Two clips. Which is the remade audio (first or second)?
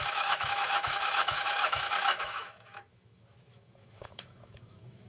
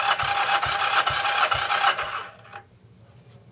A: first